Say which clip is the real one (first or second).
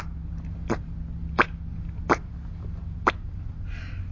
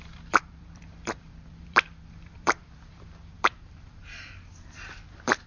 first